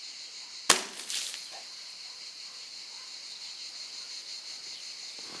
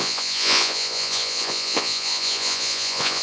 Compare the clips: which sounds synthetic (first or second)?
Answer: second